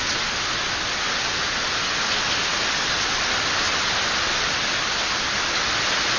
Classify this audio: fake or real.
real